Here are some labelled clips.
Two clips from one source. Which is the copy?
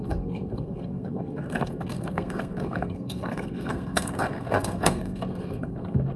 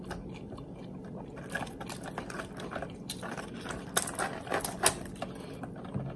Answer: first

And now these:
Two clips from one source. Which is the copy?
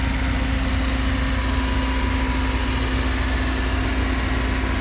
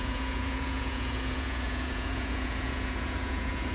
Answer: second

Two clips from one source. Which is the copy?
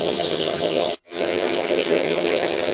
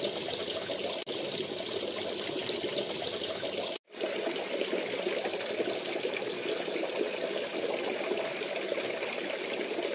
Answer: first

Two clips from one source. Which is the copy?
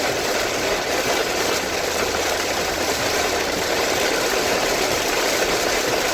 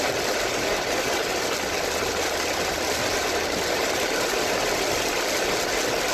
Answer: first